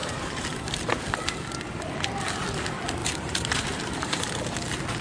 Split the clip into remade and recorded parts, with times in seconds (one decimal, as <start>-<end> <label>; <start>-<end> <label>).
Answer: 0.0-1.0 remade; 1.0-3.0 recorded; 3.0-4.5 remade; 4.5-5.0 recorded